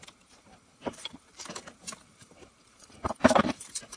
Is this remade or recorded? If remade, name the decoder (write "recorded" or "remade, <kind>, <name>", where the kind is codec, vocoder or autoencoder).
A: remade, vocoder, BigVGAN v2